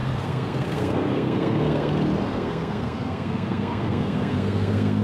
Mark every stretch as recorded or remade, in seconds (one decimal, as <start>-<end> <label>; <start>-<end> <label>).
0.0-1.9 remade; 1.9-2.3 recorded; 2.3-5.0 remade